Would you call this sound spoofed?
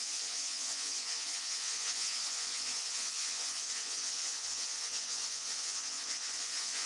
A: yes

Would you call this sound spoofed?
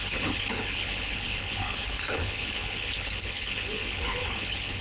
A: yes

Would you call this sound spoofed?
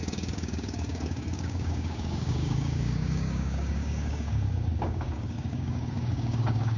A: yes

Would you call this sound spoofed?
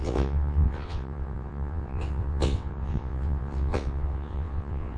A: yes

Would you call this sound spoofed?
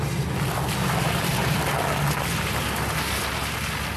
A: no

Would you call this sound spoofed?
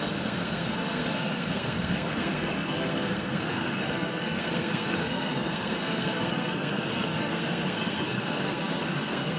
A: yes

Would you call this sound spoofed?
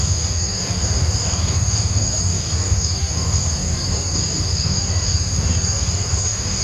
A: yes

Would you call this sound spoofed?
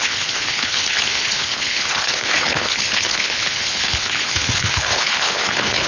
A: yes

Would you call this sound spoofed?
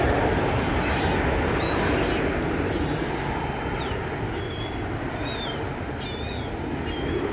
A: no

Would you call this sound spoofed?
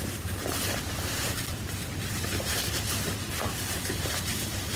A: no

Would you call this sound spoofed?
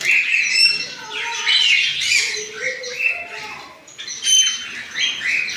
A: no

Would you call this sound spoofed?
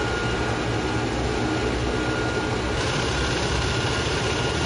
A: no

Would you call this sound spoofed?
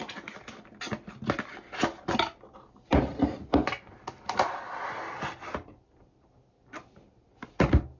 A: no